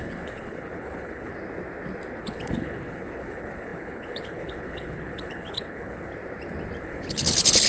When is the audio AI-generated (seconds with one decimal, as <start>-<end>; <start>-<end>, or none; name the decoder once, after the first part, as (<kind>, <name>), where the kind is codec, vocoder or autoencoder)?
0.0-1.3 (codec, HILCodec); 2.2-6.1; 6.8-7.7